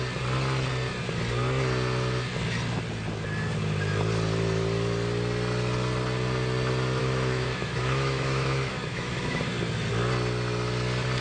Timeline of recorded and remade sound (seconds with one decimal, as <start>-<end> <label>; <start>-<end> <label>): 0.0-7.0 recorded; 7.0-9.4 remade; 9.4-11.2 recorded